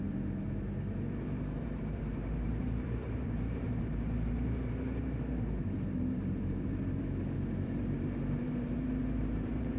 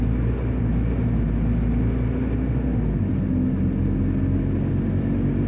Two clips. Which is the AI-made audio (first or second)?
first